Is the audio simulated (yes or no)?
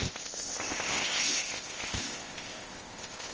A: yes